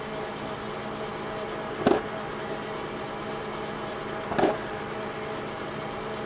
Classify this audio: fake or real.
real